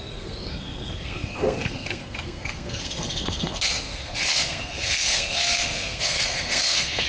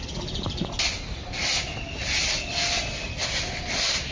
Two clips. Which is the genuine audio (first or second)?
second